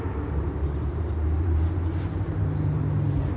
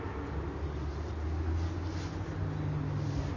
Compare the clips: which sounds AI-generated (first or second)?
first